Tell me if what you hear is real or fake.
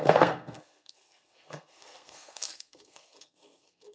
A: fake